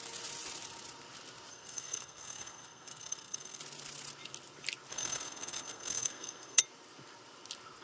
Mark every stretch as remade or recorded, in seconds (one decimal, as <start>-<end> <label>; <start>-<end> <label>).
0.0-1.5 recorded; 1.5-3.6 remade; 3.6-4.9 recorded; 4.9-6.6 remade; 6.6-7.8 recorded